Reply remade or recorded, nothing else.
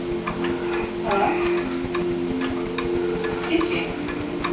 recorded